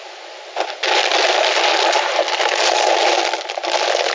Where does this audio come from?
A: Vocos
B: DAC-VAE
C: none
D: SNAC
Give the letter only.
C